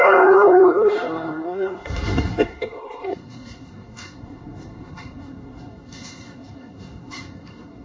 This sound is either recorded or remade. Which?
remade